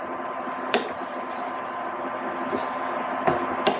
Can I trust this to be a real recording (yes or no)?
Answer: yes